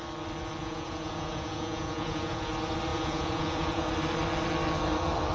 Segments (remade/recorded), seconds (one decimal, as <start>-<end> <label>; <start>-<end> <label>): 0.0-0.6 recorded; 0.6-2.4 remade; 2.4-2.9 recorded; 2.9-3.9 remade; 3.9-5.3 recorded